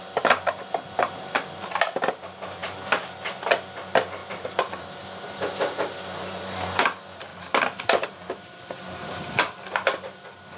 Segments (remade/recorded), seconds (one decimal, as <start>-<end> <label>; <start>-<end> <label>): 0.0-7.3 recorded; 7.3-9.3 remade; 9.3-10.6 recorded